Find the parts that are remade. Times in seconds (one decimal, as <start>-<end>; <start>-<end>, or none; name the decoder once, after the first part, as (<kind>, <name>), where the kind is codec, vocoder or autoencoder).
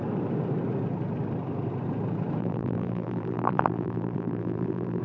2.4-5.0 (vocoder, BigVGAN v2)